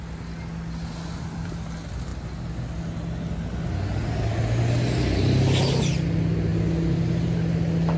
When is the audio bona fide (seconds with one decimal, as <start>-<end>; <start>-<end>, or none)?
0.0-8.0